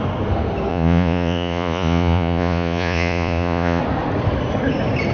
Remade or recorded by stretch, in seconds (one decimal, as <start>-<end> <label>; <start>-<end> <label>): 0.0-0.7 recorded; 0.7-3.8 remade; 3.8-5.1 recorded